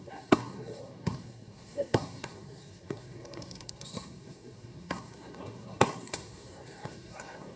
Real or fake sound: fake